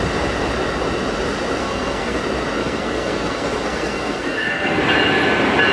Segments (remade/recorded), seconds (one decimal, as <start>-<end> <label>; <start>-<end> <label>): 0.0-1.6 recorded; 1.6-2.2 remade; 2.2-2.6 recorded; 2.6-4.8 remade; 4.8-5.7 recorded